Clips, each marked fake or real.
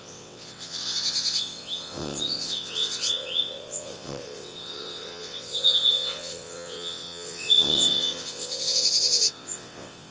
fake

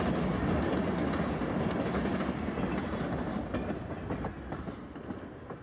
real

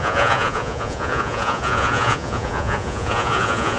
fake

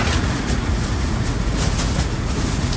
fake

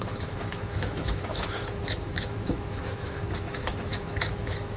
fake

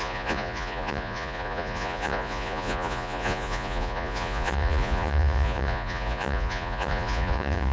fake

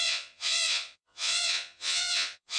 fake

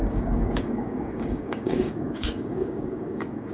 fake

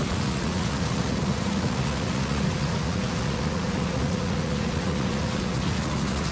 fake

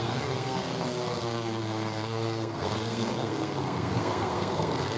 fake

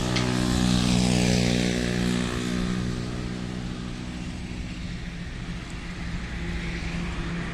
real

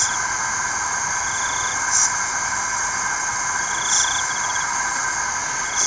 real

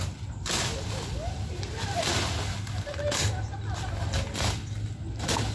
real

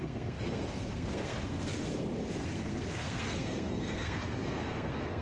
fake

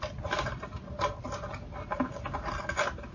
real